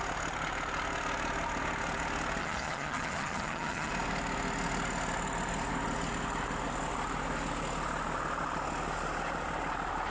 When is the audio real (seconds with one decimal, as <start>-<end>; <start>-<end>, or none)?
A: 0.0-2.4; 3.9-10.1